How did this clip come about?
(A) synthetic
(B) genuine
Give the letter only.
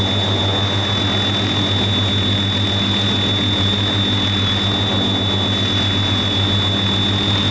B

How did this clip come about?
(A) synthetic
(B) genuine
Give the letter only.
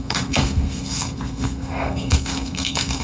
A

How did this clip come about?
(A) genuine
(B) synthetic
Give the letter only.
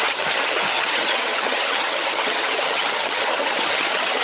B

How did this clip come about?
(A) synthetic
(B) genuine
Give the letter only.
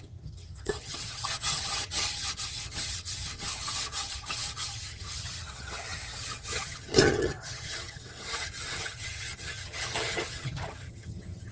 A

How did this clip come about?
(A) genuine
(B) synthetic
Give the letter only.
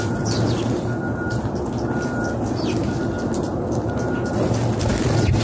A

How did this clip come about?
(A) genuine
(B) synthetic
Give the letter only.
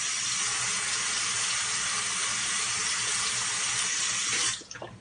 A